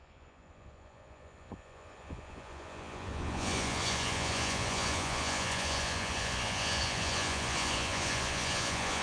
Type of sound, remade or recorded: remade